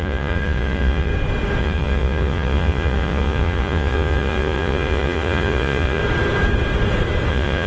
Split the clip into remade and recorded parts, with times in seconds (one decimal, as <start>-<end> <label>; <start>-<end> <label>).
0.0-1.1 remade; 1.1-1.6 recorded; 1.6-6.0 remade; 6.0-7.3 recorded; 7.3-7.7 remade